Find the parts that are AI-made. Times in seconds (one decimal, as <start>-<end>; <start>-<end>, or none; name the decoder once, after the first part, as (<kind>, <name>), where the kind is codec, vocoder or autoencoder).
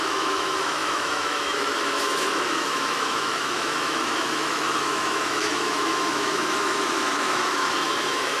0.0-8.4 (autoencoder, DAC-VAE)